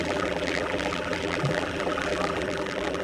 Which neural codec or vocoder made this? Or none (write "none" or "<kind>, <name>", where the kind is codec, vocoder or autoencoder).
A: vocoder, BigVGAN v2